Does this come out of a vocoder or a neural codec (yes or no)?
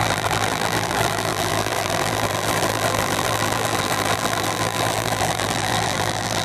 yes